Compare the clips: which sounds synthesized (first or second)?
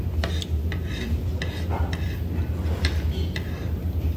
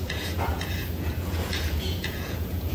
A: second